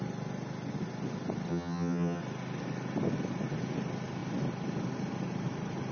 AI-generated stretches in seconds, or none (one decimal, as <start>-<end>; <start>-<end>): 1.5-2.2